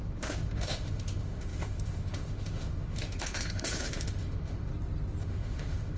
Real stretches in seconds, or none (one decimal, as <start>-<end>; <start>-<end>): 4.7-5.2